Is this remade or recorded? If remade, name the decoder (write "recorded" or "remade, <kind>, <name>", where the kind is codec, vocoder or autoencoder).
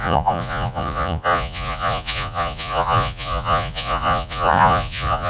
remade, vocoder, Vocos